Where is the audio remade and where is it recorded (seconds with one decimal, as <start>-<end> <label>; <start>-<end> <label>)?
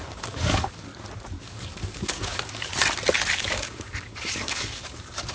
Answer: 0.0-0.9 remade; 0.9-1.4 recorded; 1.4-2.7 remade; 2.7-3.3 recorded; 3.3-5.3 remade